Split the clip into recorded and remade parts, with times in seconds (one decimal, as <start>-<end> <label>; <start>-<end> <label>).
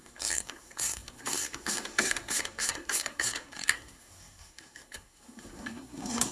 0.0-6.3 remade